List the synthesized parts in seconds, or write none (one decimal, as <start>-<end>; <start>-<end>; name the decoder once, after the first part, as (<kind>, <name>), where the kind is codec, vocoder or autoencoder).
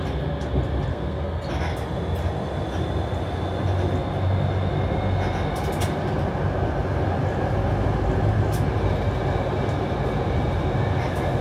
0.9-1.5 (codec, SNAC)